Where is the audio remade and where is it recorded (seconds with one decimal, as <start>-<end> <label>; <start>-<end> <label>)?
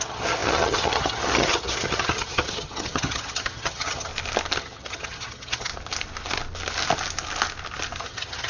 0.0-4.1 remade; 4.1-4.6 recorded; 4.6-5.7 remade; 5.7-8.0 recorded; 8.0-8.5 remade